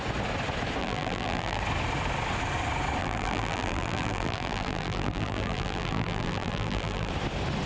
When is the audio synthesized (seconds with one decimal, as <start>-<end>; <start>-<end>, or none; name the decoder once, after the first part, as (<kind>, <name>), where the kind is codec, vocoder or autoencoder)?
0.8-1.6 (vocoder, BigVGAN v2); 3.0-7.1